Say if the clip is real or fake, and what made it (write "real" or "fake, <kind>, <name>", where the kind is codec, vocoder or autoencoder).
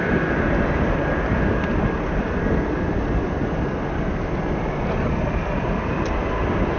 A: real